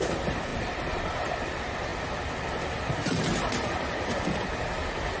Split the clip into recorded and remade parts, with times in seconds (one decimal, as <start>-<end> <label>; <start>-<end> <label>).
0.0-5.2 recorded